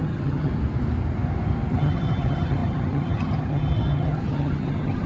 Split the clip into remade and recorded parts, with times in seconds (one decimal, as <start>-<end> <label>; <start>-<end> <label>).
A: 0.0-0.5 remade; 0.5-1.7 recorded; 1.7-5.1 remade